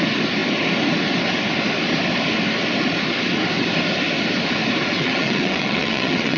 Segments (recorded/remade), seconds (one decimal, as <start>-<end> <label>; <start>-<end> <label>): 0.0-4.9 recorded; 4.9-6.4 remade